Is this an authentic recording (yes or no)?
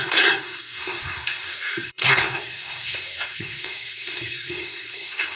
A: no